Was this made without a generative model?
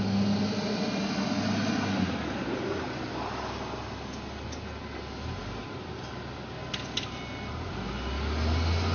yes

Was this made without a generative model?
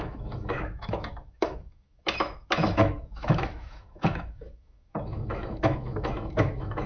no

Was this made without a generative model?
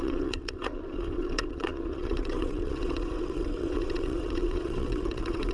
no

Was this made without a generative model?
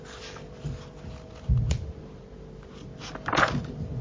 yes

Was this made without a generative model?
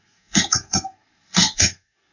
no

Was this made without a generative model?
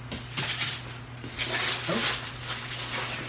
yes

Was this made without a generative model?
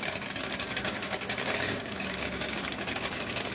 no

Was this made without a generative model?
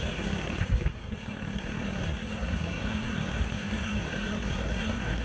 no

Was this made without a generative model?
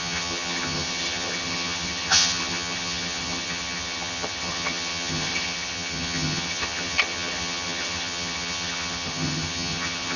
no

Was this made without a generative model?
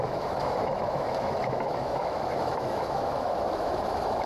no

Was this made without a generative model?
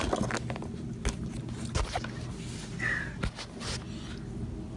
yes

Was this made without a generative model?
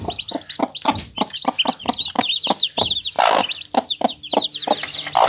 yes